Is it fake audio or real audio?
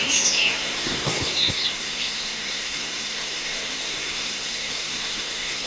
fake